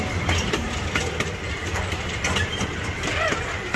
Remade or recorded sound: remade